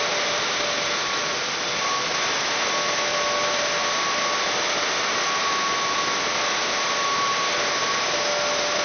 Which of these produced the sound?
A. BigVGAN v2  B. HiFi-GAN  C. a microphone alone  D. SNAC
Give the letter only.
C